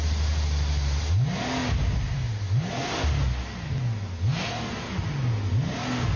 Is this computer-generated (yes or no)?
no